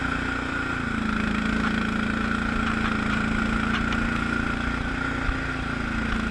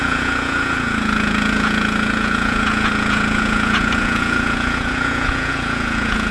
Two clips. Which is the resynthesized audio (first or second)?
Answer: second